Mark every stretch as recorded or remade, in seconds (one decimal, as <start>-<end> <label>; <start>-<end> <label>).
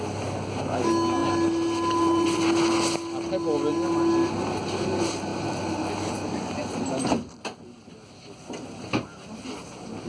0.0-1.2 recorded; 1.2-2.5 remade; 2.5-5.3 recorded; 5.3-6.1 remade; 6.1-10.1 recorded